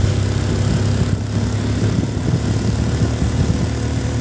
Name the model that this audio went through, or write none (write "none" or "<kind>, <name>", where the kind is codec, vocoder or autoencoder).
none